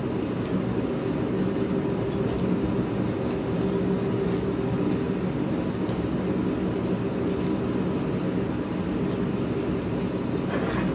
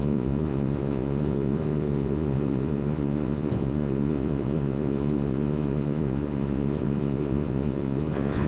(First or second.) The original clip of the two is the first